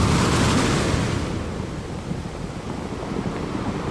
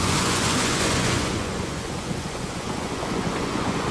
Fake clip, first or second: second